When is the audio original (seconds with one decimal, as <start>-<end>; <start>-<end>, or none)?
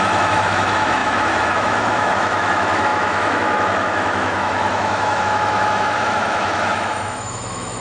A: none